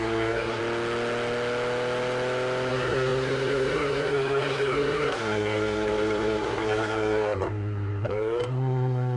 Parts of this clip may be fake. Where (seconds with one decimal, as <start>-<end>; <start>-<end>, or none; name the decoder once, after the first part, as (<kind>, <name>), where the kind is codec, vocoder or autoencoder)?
0.0-0.6 (codec, SNAC); 2.7-9.2